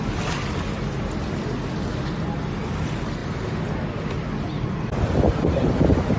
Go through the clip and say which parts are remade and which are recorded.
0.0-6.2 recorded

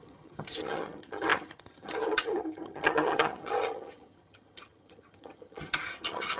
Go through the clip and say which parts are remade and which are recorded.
0.0-6.4 remade

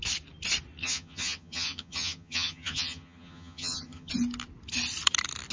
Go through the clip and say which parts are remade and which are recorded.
0.0-0.8 recorded; 0.8-4.1 remade; 4.1-5.5 recorded

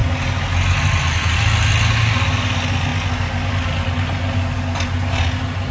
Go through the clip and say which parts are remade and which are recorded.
0.0-5.7 recorded